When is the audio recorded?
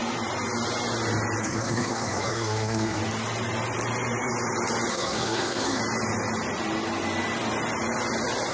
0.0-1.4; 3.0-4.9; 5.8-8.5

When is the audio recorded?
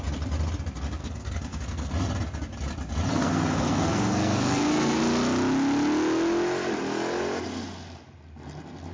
0.0-1.0; 1.9-3.1; 5.0-8.9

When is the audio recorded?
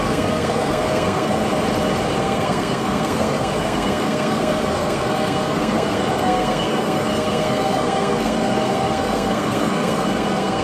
1.4-2.2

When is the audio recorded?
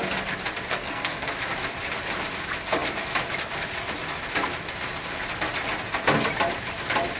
0.0-0.7; 1.3-7.2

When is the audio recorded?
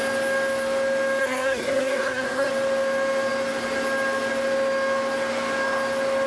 0.0-1.2; 2.5-6.3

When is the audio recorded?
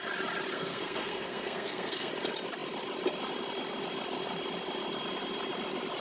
0.0-0.5; 2.1-6.0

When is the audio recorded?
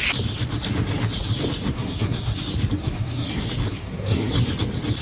0.0-1.7; 2.4-2.8; 3.3-3.7; 4.3-5.0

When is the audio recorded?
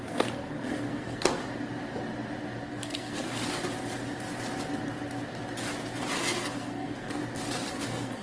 1.4-2.7; 3.4-6.4; 7.2-7.7